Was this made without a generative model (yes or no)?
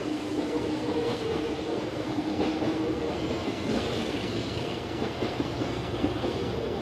no